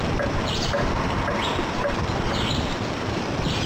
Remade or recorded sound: remade